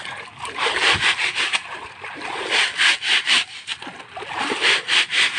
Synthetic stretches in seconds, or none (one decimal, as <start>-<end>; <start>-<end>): 0.0-3.7; 4.3-5.4